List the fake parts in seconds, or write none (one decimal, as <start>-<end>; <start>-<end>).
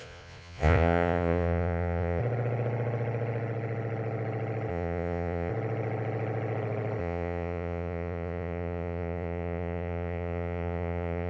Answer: 0.0-2.2; 4.7-5.5; 7.0-11.3